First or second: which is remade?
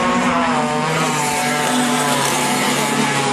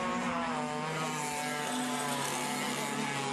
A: first